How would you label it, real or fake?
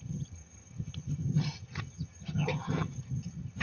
fake